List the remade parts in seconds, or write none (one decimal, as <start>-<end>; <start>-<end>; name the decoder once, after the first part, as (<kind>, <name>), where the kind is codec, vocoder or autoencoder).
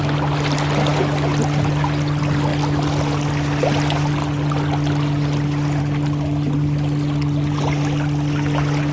none